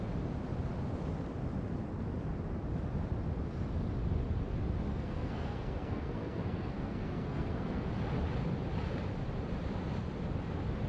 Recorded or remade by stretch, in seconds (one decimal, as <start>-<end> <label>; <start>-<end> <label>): 0.0-4.9 recorded; 4.9-7.9 remade; 7.9-10.9 recorded